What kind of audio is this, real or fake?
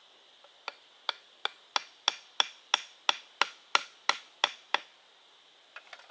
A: real